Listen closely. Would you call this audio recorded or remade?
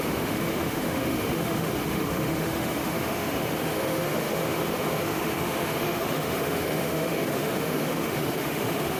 remade